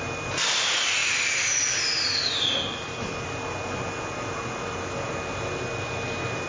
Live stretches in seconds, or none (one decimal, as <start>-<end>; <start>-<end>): 0.0-6.5